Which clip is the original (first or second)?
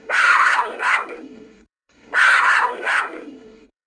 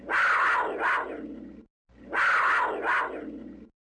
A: second